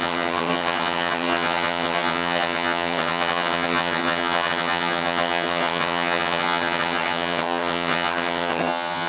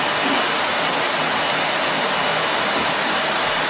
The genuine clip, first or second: second